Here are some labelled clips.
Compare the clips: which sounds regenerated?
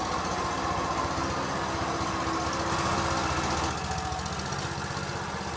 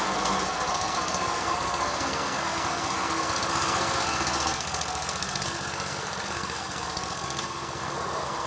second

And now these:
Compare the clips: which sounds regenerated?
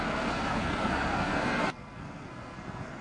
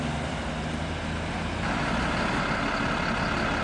first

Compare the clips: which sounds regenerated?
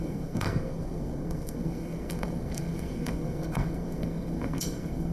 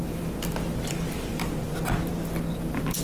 first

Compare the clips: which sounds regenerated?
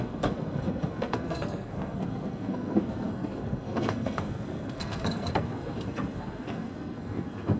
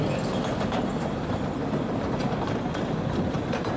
first